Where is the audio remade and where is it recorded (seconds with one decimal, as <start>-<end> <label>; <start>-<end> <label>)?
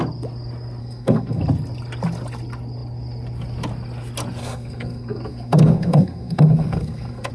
0.0-0.8 recorded; 0.8-1.4 remade; 1.4-4.4 recorded; 4.4-7.3 remade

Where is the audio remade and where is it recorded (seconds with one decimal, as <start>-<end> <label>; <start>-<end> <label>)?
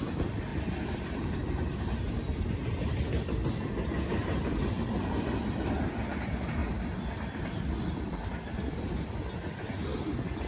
0.0-4.2 recorded; 4.2-5.4 remade; 5.4-6.6 recorded; 6.6-9.2 remade; 9.2-10.5 recorded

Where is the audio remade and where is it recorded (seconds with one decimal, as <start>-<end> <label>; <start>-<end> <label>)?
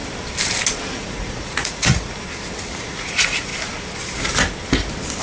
0.0-0.9 recorded; 0.9-2.1 remade; 2.1-2.8 recorded; 2.8-3.5 remade; 3.5-5.2 recorded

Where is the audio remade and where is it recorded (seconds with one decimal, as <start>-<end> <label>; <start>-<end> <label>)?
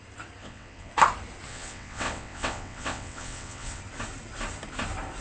0.0-0.4 recorded; 0.4-0.9 remade; 0.9-1.5 recorded; 1.5-3.8 remade; 3.8-5.2 recorded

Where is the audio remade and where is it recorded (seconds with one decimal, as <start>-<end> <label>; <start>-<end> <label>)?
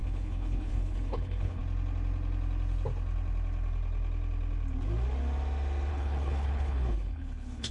0.0-1.6 remade; 1.6-5.9 recorded; 5.9-7.7 remade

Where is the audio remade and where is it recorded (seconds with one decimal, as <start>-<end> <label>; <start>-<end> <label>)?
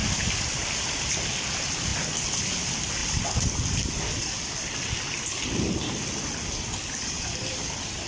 0.0-0.6 recorded; 0.6-1.9 remade; 1.9-2.4 recorded; 2.4-8.1 remade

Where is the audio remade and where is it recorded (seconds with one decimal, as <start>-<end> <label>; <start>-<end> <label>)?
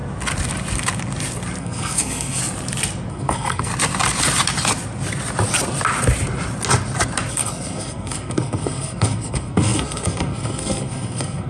0.0-1.6 recorded; 1.6-2.4 remade; 2.4-3.1 recorded; 3.1-3.7 remade; 3.7-7.3 recorded; 7.3-11.5 remade